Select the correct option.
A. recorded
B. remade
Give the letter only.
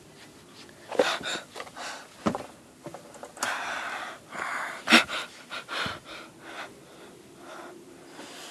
A